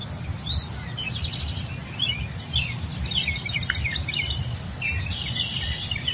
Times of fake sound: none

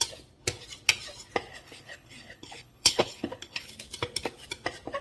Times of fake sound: 1.5-3.7 (codec, HILCodec)

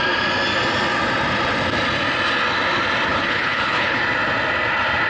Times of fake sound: 3.1-4.0 (codec, HILCodec)

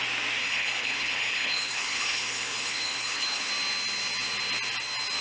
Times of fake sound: 0.4-3.5 (codec, HILCodec)

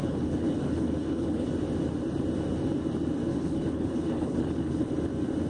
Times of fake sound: 0.0-1.5 (codec, HILCodec); 3.3-4.9

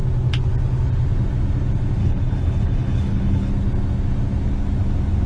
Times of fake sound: 2.0-3.5 (codec, HILCodec)

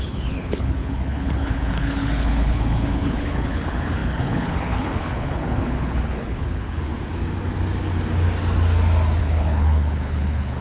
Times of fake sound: 0.0-6.9 (codec, HILCodec); 9.2-10.6

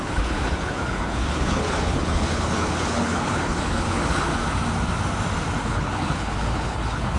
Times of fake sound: 0.0-4.3 (codec, HILCodec); 5.6-7.2